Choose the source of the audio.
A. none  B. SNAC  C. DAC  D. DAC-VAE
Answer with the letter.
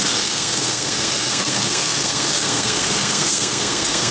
B